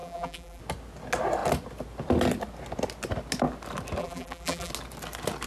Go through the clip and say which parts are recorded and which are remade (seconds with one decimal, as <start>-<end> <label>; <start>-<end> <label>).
0.0-0.6 remade; 0.6-4.0 recorded; 4.0-4.7 remade; 4.7-5.5 recorded